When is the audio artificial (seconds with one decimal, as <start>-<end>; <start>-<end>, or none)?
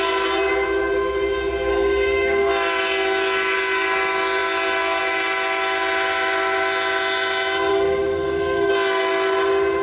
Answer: 1.7-2.5; 7.7-8.7